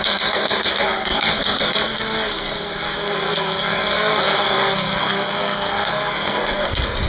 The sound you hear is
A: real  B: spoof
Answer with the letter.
B